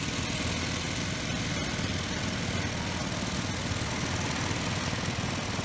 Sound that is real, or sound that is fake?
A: real